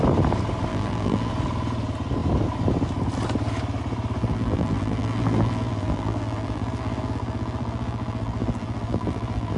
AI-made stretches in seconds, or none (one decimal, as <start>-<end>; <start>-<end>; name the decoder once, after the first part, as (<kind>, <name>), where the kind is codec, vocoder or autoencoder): 0.7-1.3 (vocoder, BigVGAN v2); 4.2-9.6